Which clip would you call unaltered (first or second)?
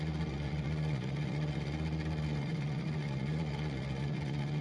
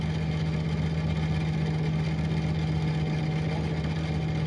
second